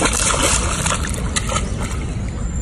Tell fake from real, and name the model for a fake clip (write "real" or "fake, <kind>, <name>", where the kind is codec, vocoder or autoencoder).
real